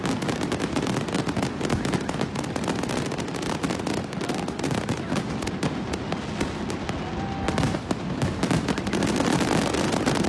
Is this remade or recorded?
recorded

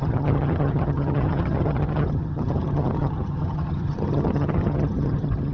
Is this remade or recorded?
remade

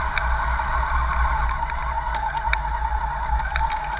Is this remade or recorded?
recorded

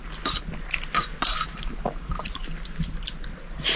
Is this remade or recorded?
recorded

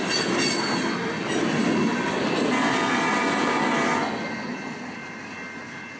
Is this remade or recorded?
recorded